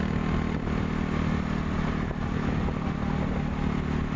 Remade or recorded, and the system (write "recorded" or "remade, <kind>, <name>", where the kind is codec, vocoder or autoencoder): recorded